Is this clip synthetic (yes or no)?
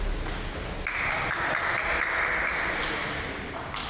no